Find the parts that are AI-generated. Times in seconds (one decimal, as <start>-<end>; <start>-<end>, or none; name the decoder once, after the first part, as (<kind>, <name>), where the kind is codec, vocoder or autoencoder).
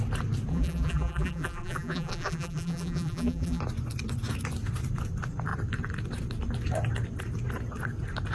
0.5-3.6 (vocoder, BigVGAN v2)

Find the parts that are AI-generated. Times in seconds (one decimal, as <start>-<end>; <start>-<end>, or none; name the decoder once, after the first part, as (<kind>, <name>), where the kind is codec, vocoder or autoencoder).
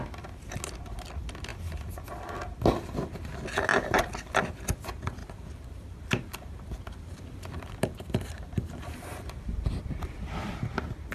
5.2-10.2 (vocoder, BigVGAN v2)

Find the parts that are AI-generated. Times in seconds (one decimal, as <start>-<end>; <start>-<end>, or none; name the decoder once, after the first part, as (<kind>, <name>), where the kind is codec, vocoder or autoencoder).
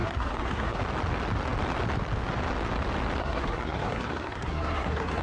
0.0-0.8 (codec, SNAC); 3.2-5.2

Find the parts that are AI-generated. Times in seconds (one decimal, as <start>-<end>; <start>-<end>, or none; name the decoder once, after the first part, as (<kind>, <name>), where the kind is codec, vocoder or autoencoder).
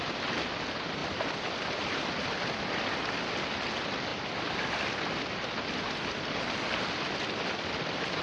1.0-2.1 (vocoder, BigVGAN v2); 4.1-6.2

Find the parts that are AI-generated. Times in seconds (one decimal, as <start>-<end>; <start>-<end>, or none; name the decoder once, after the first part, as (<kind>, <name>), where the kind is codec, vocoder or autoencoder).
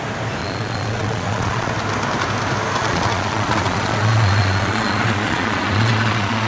0.4-1.7 (vocoder, Vocos); 2.8-6.5